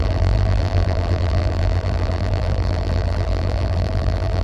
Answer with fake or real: fake